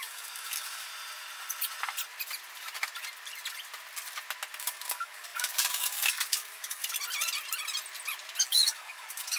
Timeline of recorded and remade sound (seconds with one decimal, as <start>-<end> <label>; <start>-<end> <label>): 0.0-0.9 remade; 0.9-4.6 recorded; 4.6-6.8 remade; 6.8-8.4 recorded; 8.4-9.4 remade